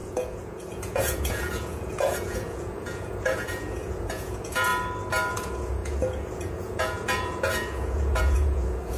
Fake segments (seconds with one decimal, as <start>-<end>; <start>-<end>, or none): 0.0-4.7; 5.3-9.0